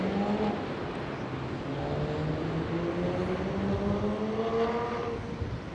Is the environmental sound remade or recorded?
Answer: recorded